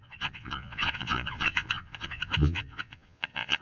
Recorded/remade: remade